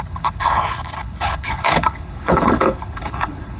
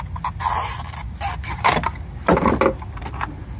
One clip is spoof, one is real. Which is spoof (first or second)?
first